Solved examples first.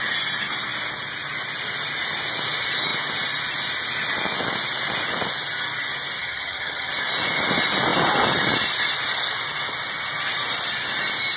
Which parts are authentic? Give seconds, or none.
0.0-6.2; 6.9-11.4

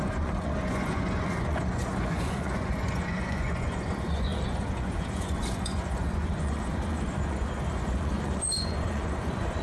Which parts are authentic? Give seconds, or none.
none

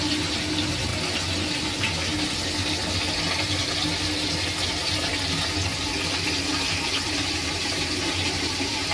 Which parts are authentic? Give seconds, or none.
0.9-1.5; 2.1-7.3